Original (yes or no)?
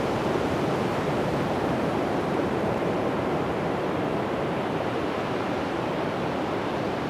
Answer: no